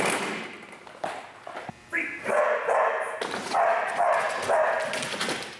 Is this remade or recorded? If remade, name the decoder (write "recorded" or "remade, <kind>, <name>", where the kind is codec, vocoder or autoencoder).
recorded